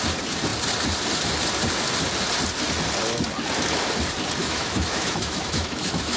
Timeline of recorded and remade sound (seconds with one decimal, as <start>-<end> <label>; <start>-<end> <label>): 0.0-4.4 recorded; 4.4-6.2 remade